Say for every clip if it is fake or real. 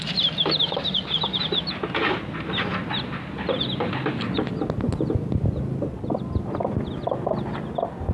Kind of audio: real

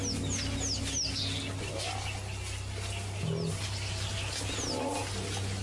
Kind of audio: real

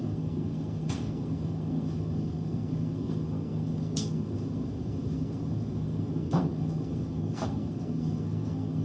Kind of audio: fake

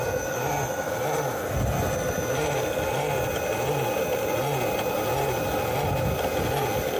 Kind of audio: real